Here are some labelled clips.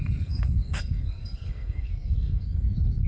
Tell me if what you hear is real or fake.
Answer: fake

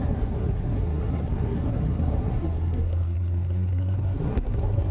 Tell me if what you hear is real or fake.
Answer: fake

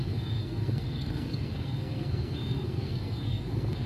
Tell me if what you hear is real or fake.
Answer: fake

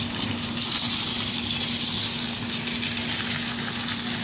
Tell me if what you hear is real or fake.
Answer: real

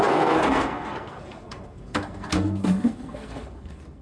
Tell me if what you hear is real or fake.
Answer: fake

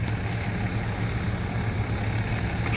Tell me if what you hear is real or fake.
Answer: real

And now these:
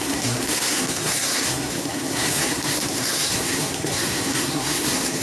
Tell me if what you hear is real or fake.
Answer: fake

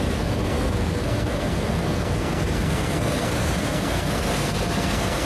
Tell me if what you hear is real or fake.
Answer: fake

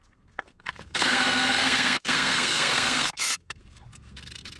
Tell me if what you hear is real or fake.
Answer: fake